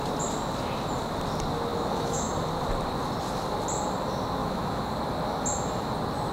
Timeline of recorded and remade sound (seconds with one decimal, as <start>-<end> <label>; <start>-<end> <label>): 0.0-1.7 recorded; 1.7-2.3 remade; 2.3-4.4 recorded; 4.4-4.9 remade; 4.9-6.3 recorded